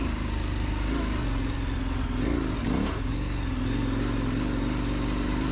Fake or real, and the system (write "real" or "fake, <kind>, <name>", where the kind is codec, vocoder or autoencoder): real